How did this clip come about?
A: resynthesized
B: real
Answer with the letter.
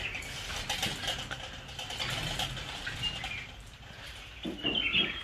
B